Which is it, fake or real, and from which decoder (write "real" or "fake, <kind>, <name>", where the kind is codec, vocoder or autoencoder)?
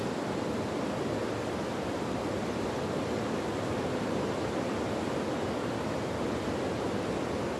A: real